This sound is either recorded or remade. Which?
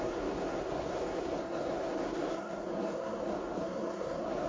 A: remade